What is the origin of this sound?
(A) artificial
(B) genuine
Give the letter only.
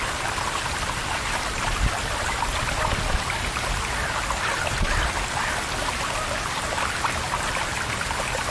B